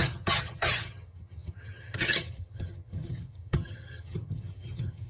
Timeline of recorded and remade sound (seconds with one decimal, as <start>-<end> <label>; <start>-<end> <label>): 0.0-5.1 remade